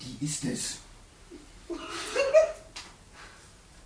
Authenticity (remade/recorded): recorded